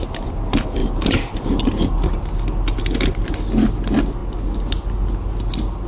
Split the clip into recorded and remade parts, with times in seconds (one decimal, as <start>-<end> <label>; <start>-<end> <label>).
0.0-5.9 recorded

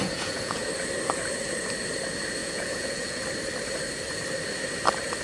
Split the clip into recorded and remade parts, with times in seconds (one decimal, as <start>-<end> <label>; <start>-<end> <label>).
0.0-0.7 remade; 0.7-2.4 recorded; 2.4-3.2 remade; 3.2-5.2 recorded

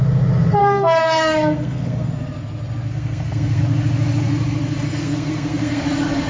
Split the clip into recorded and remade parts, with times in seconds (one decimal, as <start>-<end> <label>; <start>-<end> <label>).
0.0-0.6 recorded; 0.6-2.1 remade; 2.1-2.9 recorded; 2.9-3.6 remade; 3.6-4.9 recorded; 4.9-5.8 remade; 5.8-6.3 recorded

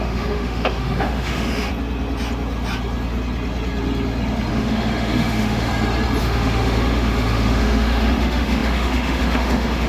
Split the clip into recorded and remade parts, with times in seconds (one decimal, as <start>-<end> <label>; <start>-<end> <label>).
0.0-1.7 remade; 1.7-4.5 recorded; 4.5-5.7 remade; 5.7-6.2 recorded; 6.2-9.9 remade